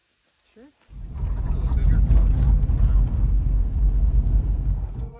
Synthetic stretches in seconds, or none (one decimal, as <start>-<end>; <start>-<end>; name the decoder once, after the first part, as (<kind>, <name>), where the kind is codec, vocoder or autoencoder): 3.1-5.2 (codec, SNAC)

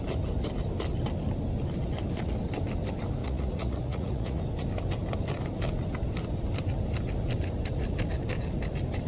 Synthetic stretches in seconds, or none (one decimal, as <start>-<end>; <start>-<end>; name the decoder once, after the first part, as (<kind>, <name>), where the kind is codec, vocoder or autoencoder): 3.2-4.4 (vocoder, Vocos)

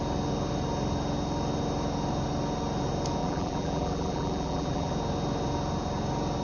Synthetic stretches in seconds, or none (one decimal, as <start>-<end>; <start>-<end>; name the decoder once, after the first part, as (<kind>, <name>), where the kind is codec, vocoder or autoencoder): 3.2-4.9 (vocoder, BigVGAN v2)

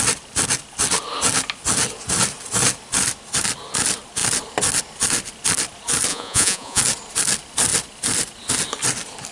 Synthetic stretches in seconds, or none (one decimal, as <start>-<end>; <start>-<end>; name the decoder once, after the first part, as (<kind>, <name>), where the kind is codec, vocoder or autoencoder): 6.1-6.8 (vocoder, Vocos)

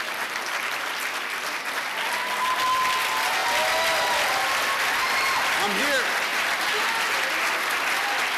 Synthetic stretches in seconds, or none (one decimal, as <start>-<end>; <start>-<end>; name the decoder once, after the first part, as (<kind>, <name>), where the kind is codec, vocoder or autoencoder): none